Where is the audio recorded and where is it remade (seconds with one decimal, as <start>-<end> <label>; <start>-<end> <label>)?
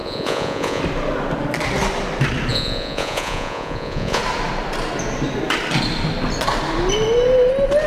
0.0-0.8 remade; 0.8-2.5 recorded; 2.5-4.2 remade; 4.2-7.9 recorded